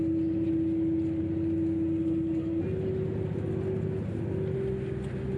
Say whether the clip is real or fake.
real